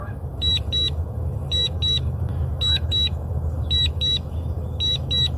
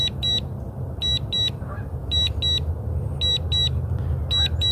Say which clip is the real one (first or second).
second